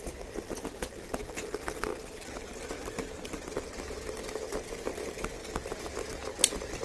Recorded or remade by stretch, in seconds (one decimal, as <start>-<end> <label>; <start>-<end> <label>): 0.0-6.8 recorded